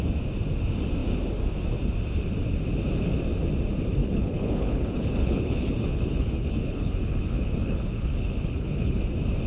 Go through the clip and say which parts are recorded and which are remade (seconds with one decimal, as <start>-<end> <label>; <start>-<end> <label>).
0.0-4.0 recorded; 4.0-9.0 remade; 9.0-9.5 recorded